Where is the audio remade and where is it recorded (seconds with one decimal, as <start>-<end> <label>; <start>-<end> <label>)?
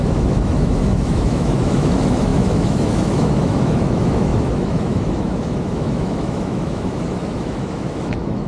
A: 0.0-8.5 remade